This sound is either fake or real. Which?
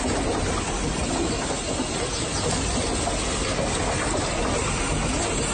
real